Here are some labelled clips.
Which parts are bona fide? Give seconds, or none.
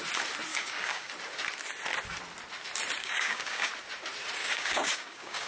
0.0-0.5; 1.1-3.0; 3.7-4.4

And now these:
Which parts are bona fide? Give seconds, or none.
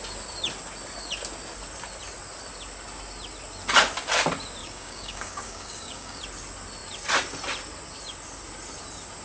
0.0-4.6; 6.2-9.2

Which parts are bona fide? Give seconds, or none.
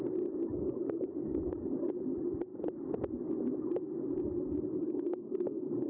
0.0-0.5; 1.9-4.8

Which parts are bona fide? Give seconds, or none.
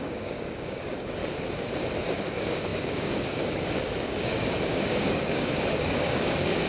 1.2-2.0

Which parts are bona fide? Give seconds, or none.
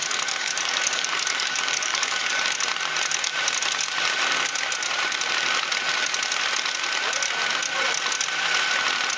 2.4-9.2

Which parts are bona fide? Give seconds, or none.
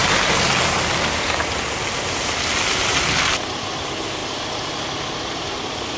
0.0-6.0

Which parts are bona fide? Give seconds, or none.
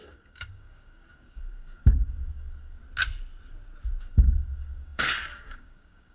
2.8-4.0